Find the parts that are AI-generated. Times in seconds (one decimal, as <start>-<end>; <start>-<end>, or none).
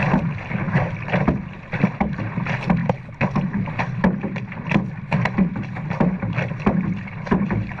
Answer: none